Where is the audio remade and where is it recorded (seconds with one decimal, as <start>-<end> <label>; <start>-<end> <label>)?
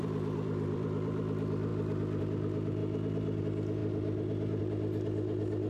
0.0-1.7 remade; 1.7-2.2 recorded; 2.2-2.8 remade; 2.8-3.4 recorded; 3.4-5.7 remade